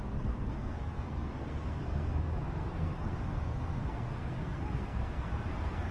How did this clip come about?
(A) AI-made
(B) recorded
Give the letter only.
A